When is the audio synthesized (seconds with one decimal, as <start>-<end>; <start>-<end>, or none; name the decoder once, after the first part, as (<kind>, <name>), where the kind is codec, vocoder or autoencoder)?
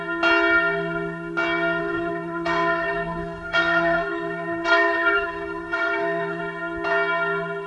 1.8-6.4 (codec, SNAC)